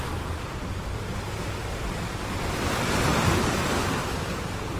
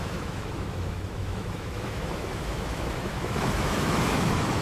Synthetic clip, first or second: second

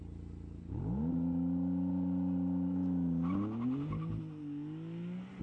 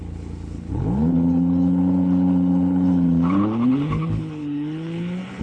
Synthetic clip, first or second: second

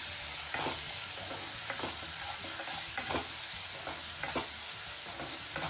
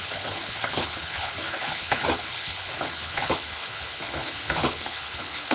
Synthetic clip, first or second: second